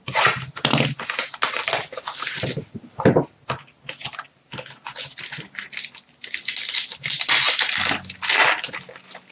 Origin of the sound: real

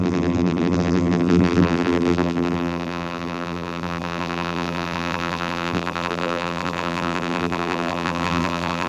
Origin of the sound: fake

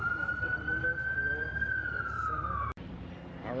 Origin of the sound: fake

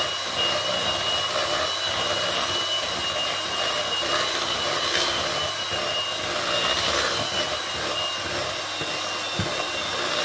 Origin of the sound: real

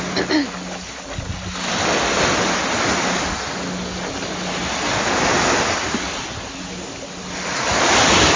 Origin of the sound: real